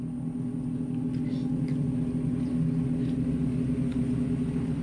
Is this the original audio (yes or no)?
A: yes